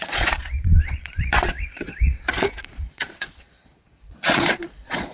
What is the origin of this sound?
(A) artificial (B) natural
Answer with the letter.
A